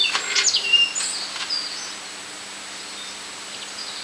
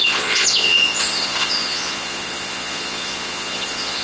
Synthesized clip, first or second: second